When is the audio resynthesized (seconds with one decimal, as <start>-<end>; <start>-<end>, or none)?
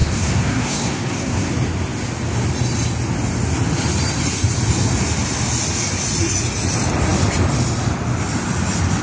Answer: 0.0-1.5